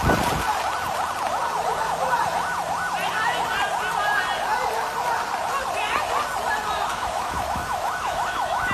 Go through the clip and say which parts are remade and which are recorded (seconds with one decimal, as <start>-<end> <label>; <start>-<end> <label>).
0.0-6.9 recorded; 6.9-8.7 remade

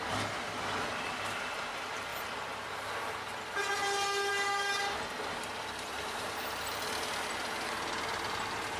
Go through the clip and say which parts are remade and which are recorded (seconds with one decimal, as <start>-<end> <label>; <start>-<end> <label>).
0.0-8.8 recorded

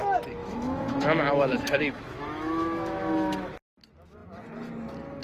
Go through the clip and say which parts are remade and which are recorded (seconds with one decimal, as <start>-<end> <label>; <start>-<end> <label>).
0.0-0.4 recorded; 0.4-3.5 remade; 3.5-5.2 recorded

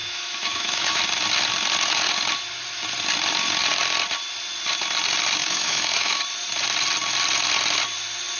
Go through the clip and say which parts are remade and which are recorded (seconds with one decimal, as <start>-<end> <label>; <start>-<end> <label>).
0.0-1.0 remade; 1.0-5.4 recorded; 5.4-6.2 remade; 6.2-8.4 recorded